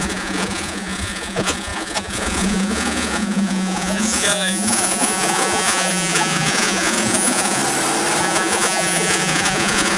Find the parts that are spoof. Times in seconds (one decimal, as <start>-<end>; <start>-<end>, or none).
0.0-7.6; 8.2-10.0